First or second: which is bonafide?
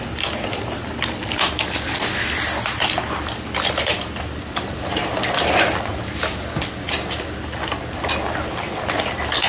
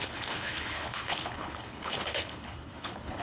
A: first